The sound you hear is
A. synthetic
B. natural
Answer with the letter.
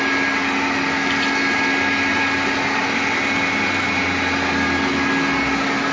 B